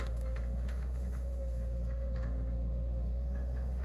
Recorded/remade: remade